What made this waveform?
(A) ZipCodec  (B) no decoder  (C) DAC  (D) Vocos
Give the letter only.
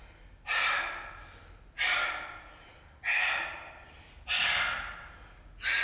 B